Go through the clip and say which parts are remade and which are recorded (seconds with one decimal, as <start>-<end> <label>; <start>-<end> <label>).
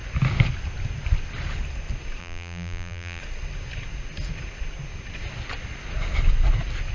0.0-2.2 recorded; 2.2-3.2 remade; 3.2-6.9 recorded